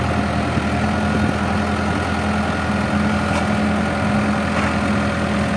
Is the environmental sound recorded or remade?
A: recorded